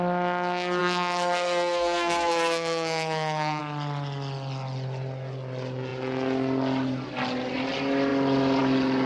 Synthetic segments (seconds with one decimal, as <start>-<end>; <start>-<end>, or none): 0.8-3.6